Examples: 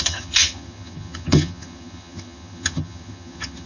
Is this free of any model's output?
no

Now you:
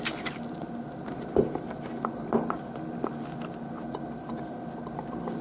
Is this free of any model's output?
yes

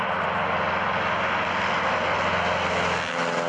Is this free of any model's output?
yes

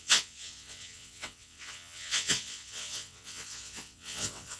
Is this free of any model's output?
no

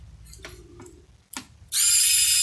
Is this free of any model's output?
yes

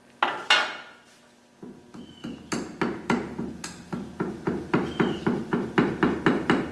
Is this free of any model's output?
yes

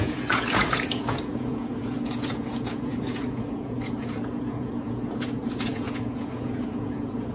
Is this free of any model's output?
no